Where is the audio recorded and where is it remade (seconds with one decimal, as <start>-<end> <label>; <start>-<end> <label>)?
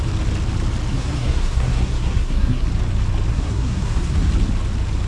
0.0-0.9 recorded; 0.9-2.7 remade; 2.7-3.3 recorded; 3.3-4.3 remade; 4.3-5.1 recorded